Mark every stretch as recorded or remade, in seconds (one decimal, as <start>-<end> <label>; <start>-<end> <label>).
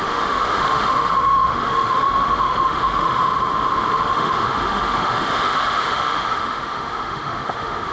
0.0-3.3 remade; 3.3-3.9 recorded; 3.9-7.9 remade